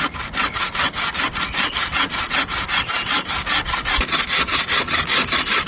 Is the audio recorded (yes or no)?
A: yes